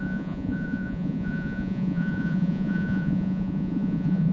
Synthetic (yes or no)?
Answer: yes